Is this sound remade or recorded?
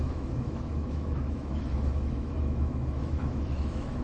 remade